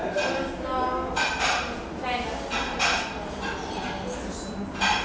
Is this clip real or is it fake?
real